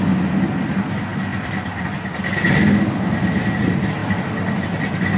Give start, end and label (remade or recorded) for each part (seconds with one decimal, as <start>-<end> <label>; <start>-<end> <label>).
0.0-1.3 recorded; 1.3-2.2 remade; 2.2-4.0 recorded; 4.0-4.5 remade; 4.5-5.2 recorded